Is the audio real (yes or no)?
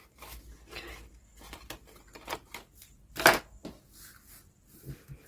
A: yes